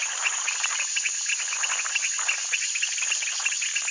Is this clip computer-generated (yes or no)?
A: no